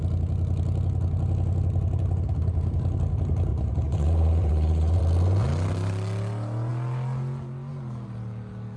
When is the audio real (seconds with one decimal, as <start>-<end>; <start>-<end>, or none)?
0.0-3.5; 5.0-8.8